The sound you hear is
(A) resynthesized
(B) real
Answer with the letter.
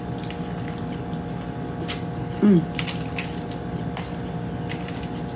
B